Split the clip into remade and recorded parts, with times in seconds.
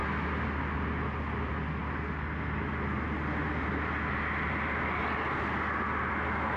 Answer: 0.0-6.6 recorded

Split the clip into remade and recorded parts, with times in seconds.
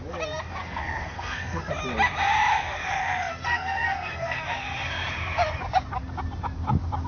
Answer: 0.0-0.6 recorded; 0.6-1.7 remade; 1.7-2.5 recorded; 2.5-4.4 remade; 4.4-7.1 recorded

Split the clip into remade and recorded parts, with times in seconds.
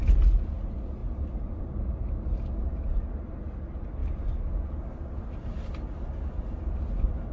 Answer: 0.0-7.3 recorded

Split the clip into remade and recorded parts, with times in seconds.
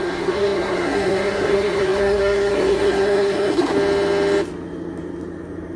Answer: 0.0-3.7 remade; 3.7-5.8 recorded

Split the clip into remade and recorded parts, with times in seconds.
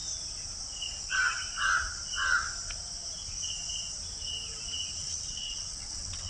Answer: 0.0-5.0 recorded; 5.0-6.3 remade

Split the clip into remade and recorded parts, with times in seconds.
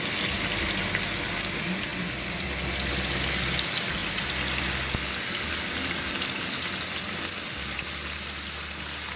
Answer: 0.0-9.2 recorded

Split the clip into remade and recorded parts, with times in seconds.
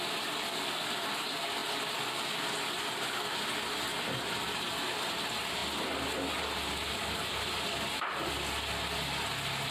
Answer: 0.0-9.7 recorded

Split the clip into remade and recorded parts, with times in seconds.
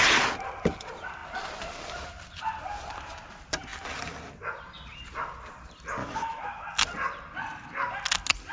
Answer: 0.0-6.0 recorded; 6.0-6.6 remade; 6.6-8.5 recorded